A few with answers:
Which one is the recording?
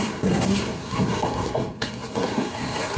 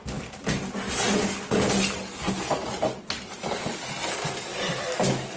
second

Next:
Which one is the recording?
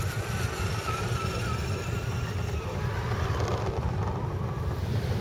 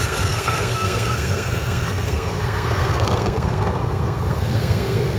first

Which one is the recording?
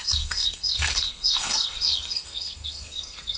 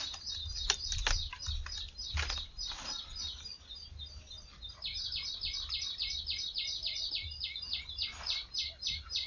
second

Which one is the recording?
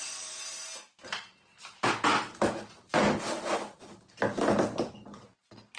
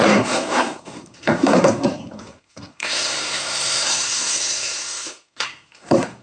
first